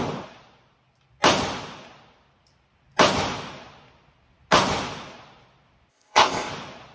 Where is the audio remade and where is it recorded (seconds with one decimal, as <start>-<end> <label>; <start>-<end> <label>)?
0.0-5.9 recorded; 5.9-6.5 remade; 6.5-6.9 recorded